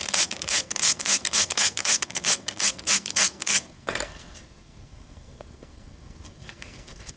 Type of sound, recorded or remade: remade